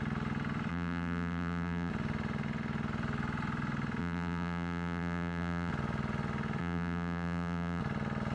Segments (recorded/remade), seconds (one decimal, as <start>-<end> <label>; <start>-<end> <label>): 0.0-0.7 recorded; 0.7-1.9 remade; 1.9-4.0 recorded; 4.0-5.7 remade; 5.7-6.6 recorded; 6.6-7.8 remade; 7.8-8.3 recorded